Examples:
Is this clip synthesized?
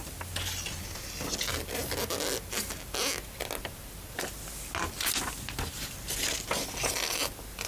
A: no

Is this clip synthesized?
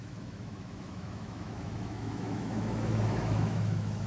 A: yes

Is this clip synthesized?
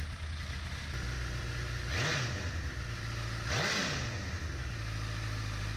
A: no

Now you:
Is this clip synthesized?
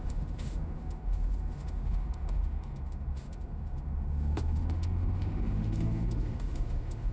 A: yes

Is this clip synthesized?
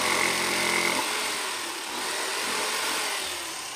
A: no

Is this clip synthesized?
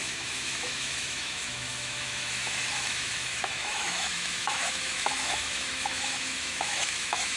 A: yes